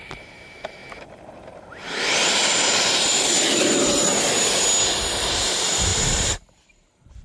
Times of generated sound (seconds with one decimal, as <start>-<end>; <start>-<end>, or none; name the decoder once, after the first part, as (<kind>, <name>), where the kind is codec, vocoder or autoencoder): 0.0-0.8 (vocoder, BigVGAN v2); 2.1-4.1; 5.2-7.2